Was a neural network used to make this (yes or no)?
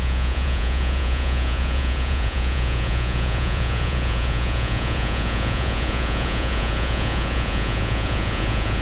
yes